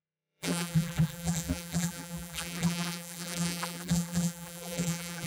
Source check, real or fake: fake